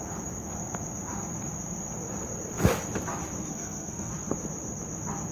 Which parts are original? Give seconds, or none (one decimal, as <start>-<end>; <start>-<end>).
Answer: 0.0-3.4; 4.1-5.3